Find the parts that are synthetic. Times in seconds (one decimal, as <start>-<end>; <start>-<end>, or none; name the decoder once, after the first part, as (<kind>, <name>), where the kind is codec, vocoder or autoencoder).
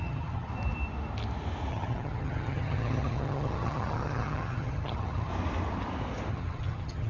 0.0-0.5 (vocoder, HiFi-GAN); 1.7-5.3; 6.3-7.1